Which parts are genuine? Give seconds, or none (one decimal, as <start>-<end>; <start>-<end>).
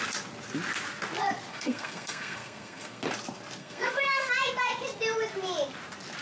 0.0-1.5; 3.0-3.6; 4.3-6.2